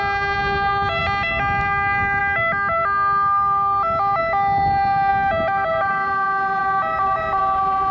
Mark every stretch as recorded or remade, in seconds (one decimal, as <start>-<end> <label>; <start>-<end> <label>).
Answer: 0.0-7.9 recorded